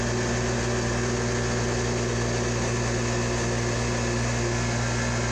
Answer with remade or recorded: recorded